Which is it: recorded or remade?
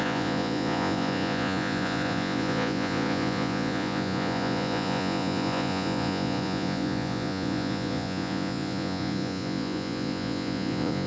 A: remade